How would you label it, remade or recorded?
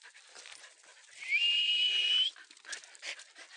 recorded